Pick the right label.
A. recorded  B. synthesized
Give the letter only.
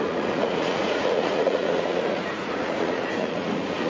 B